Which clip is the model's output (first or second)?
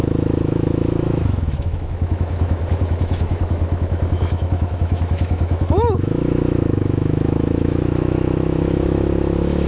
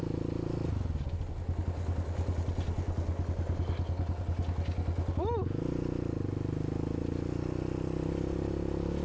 first